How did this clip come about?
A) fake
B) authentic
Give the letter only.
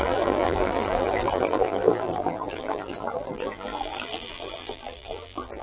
A